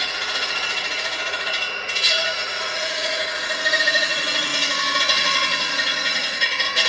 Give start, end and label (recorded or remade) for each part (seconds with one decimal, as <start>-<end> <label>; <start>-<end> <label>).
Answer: 0.0-4.5 remade; 4.5-5.0 recorded; 5.0-6.9 remade